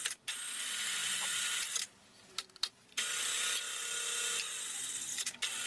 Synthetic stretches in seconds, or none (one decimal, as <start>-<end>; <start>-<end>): 1.0-3.1; 5.1-5.7